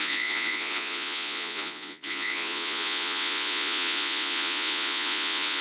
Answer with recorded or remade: remade